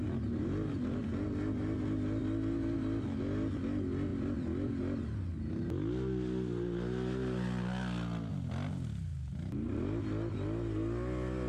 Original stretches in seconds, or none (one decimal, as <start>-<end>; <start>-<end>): 0.0-11.5